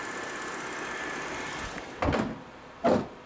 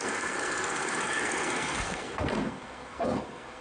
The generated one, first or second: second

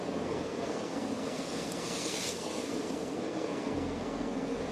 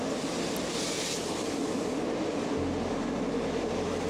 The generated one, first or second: first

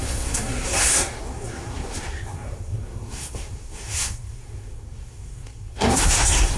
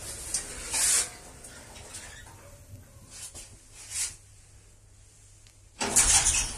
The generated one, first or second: first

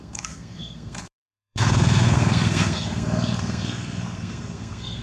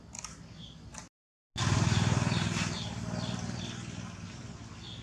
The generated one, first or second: first